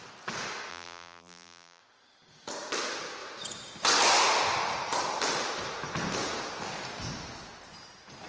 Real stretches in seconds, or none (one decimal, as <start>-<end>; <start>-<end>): 0.0-0.7; 1.8-8.3